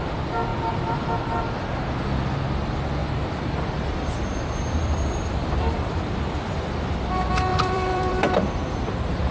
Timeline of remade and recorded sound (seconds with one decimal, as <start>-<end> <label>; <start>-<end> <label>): 0.0-0.5 recorded; 0.5-1.5 remade; 1.5-3.0 recorded; 3.0-6.3 remade; 6.3-7.5 recorded; 7.5-8.7 remade; 8.7-9.3 recorded